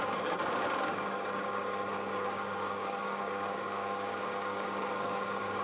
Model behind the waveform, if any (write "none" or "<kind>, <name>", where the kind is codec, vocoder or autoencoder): codec, DAC